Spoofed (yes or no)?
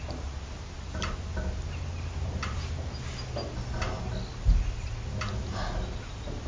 no